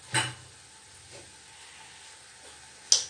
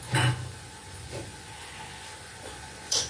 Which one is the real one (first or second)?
first